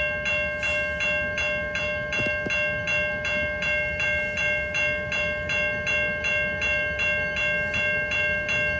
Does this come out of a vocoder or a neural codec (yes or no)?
no